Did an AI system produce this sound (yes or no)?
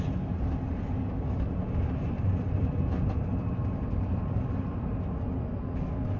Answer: no